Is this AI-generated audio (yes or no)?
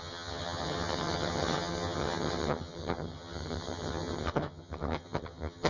yes